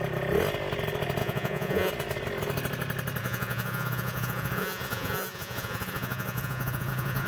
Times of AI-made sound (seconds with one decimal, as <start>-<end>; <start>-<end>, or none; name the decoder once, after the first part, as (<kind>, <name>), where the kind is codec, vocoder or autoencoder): 1.2-1.9 (vocoder, Vocos); 3.2-7.3